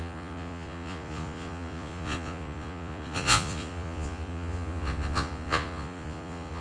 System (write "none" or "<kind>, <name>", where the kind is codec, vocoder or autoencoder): vocoder, Vocos